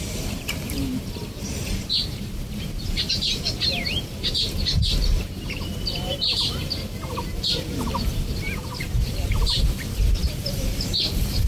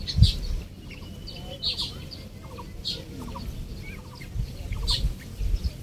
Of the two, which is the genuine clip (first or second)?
second